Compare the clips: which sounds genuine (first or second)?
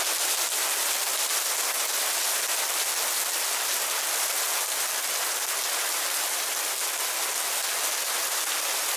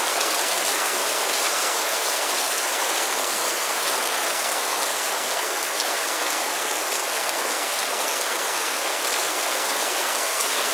first